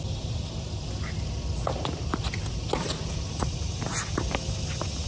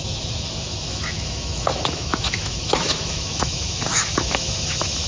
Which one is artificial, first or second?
second